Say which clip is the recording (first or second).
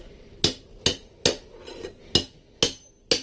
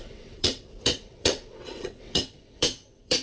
first